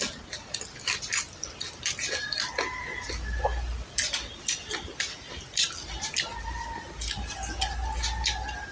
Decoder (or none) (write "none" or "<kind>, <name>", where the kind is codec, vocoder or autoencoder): none